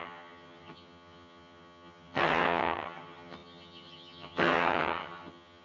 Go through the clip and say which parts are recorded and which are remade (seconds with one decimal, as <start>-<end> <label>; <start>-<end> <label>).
0.0-5.6 remade